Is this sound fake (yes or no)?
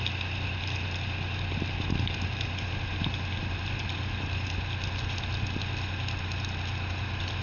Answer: no